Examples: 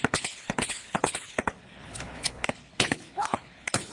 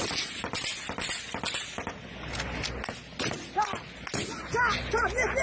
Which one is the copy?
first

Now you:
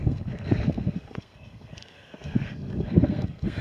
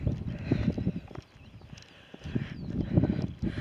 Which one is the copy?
first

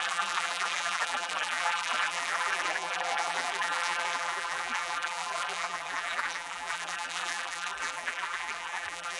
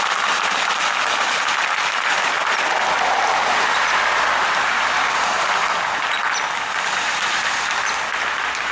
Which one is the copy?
first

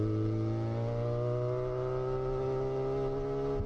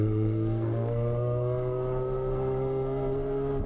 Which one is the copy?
second